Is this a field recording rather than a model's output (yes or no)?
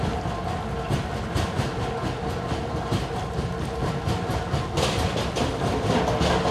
yes